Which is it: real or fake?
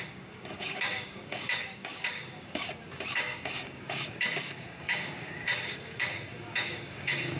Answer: fake